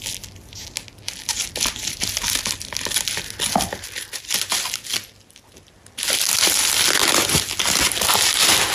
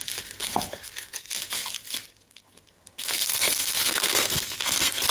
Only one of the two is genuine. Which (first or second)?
first